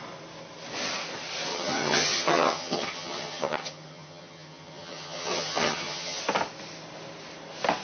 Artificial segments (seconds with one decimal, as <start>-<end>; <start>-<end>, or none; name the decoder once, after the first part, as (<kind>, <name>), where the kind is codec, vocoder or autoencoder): 1.5-6.2 (vocoder, HiFi-GAN)